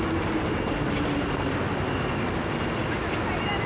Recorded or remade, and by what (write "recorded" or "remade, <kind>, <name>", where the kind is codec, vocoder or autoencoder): recorded